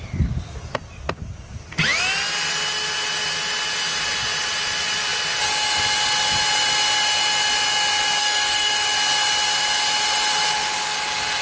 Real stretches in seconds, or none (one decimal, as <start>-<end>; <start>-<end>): 0.0-8.2; 8.7-11.4